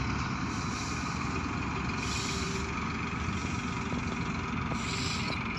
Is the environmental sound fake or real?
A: real